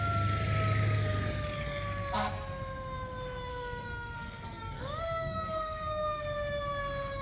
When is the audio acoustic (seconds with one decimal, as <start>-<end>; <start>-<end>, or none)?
0.0-3.5; 6.2-7.2